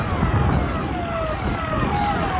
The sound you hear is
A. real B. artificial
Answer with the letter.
A